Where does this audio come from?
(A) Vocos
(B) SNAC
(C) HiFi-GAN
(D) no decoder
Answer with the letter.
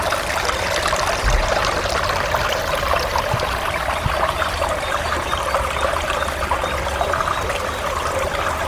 D